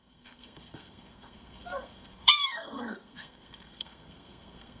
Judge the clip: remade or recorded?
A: remade